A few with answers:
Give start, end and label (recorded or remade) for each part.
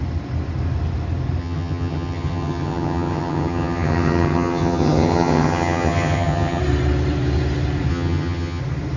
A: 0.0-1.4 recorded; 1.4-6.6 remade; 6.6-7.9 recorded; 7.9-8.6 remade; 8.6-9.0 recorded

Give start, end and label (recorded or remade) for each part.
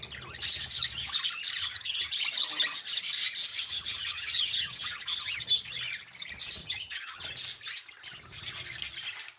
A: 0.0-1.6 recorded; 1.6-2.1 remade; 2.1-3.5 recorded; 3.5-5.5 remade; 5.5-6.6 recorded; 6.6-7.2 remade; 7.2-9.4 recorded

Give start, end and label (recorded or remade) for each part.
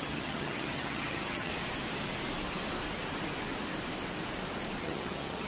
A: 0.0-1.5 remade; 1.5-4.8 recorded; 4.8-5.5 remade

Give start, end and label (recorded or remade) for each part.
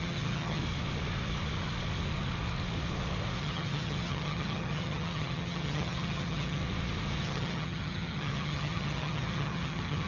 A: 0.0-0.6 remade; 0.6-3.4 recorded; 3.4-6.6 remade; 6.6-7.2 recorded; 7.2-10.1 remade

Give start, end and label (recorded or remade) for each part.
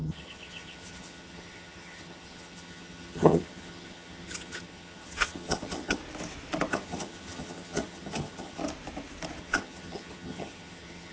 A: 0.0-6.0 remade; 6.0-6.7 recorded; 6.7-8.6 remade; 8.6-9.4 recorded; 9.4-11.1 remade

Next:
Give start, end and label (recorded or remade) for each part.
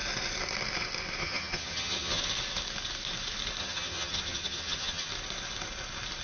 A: 0.0-1.2 recorded; 1.2-2.2 remade; 2.2-3.6 recorded; 3.6-5.1 remade; 5.1-6.2 recorded